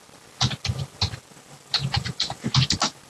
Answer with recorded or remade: recorded